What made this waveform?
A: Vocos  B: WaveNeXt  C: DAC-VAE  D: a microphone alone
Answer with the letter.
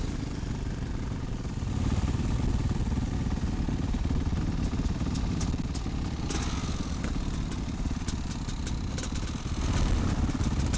D